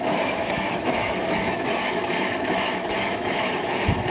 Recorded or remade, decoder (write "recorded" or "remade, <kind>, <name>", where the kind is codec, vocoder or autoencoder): remade, autoencoder, DAC-VAE